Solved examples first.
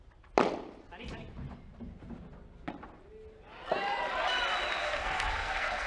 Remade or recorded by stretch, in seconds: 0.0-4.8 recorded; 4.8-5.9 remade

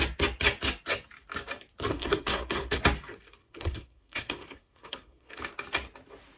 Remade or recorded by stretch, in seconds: 0.0-1.9 recorded; 1.9-2.8 remade; 2.8-3.4 recorded; 3.4-5.4 remade; 5.4-6.4 recorded